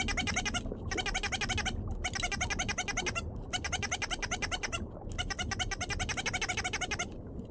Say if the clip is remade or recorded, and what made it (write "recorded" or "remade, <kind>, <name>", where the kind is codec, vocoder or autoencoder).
recorded